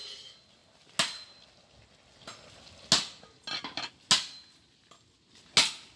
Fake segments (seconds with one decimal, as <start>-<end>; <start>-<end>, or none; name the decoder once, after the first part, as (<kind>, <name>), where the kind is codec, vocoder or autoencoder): none